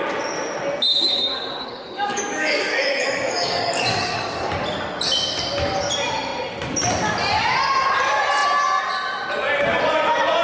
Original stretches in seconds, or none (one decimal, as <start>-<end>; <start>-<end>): 0.0-0.9; 4.5-10.4